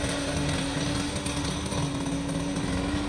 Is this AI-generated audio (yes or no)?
no